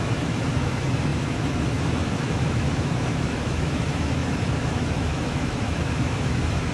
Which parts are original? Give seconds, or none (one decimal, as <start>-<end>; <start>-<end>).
none

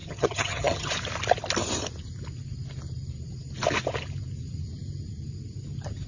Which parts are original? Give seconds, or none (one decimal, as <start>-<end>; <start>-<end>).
0.9-6.1